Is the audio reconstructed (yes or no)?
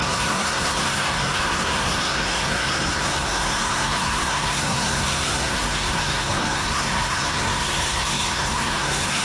yes